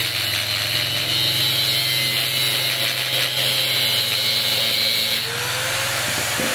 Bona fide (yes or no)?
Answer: yes